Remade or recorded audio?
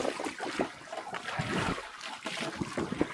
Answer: recorded